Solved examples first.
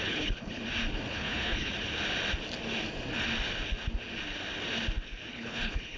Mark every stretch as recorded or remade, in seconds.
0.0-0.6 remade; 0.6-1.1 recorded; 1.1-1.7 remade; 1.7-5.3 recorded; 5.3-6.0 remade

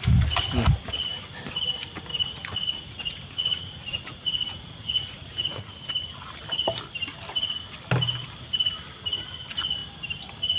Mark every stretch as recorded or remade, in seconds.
0.0-2.1 recorded; 2.1-5.6 remade; 5.6-10.6 recorded

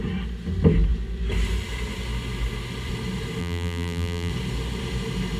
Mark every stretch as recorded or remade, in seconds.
0.0-3.4 recorded; 3.4-4.3 remade; 4.3-5.4 recorded

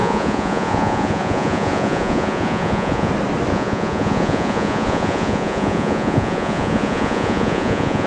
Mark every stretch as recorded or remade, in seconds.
0.0-3.1 remade; 3.1-3.5 recorded; 3.5-8.1 remade

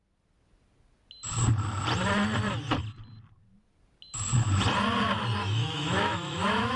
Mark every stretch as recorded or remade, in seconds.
0.0-5.4 recorded; 5.4-6.8 remade

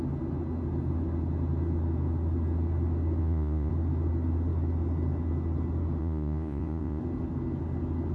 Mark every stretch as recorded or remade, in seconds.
0.0-3.2 recorded; 3.2-3.7 remade; 3.7-6.0 recorded; 6.0-7.0 remade; 7.0-8.1 recorded

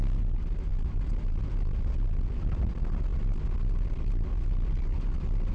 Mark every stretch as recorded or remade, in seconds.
0.0-5.5 recorded

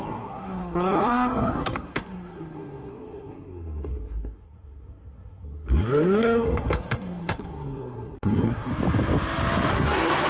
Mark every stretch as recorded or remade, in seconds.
0.0-8.7 remade; 8.7-9.7 recorded; 9.7-10.3 remade